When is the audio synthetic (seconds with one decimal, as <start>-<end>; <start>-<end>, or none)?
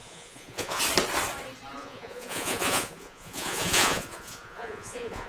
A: 0.0-0.8; 1.8-5.3